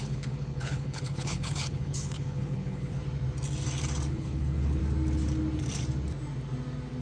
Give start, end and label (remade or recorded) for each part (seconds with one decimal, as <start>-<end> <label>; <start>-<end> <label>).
0.0-3.0 remade; 3.0-4.1 recorded; 4.1-4.8 remade; 4.8-7.0 recorded